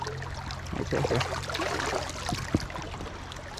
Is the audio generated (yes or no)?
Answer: no